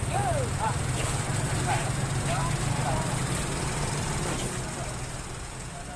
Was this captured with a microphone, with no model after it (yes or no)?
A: yes